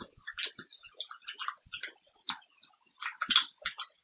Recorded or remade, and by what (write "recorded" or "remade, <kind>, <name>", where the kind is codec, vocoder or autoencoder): recorded